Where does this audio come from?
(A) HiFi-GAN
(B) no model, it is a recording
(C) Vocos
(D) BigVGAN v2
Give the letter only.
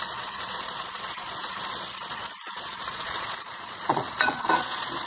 C